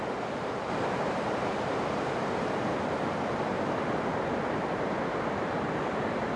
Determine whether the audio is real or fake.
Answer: real